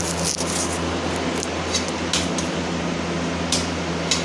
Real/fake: real